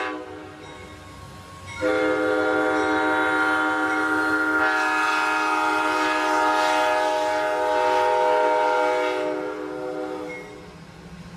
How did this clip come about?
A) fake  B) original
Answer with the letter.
B